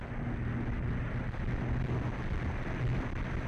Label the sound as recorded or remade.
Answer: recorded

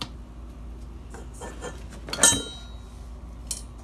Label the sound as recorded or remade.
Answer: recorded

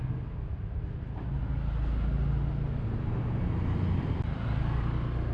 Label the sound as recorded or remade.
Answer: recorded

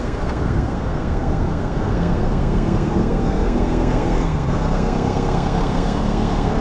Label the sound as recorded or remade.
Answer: remade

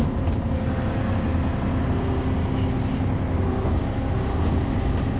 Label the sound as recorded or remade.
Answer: recorded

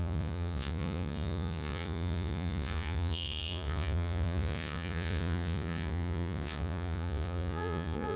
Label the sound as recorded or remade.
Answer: remade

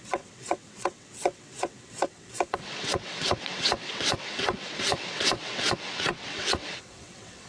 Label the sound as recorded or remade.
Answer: remade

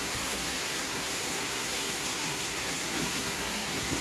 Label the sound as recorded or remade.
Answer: remade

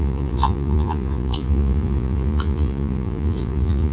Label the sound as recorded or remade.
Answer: remade